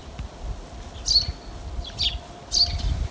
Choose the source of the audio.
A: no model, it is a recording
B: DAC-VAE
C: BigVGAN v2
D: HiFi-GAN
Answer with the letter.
A